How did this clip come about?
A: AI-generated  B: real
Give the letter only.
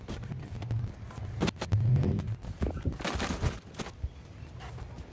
B